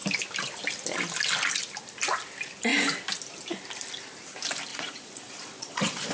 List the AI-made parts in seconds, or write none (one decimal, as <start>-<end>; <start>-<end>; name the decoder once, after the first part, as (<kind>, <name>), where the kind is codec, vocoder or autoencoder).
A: 4.7-6.1 (vocoder, Vocos)